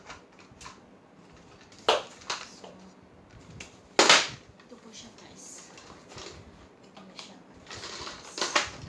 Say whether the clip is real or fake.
real